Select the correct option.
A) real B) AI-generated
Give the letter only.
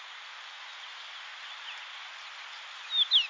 A